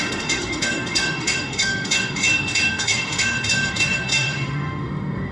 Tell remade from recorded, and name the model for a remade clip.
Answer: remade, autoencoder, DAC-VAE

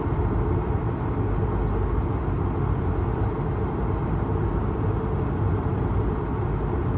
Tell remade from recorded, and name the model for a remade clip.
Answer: recorded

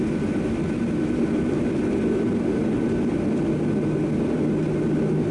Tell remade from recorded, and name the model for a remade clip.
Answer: recorded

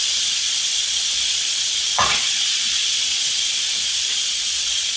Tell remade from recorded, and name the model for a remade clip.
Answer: remade, vocoder, Vocos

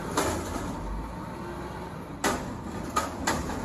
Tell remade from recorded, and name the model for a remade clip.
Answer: recorded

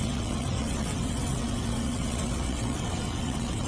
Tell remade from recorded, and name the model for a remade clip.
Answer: remade, vocoder, WaveNeXt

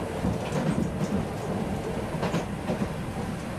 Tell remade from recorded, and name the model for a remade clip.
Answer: recorded